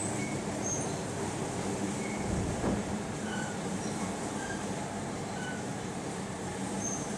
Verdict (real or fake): fake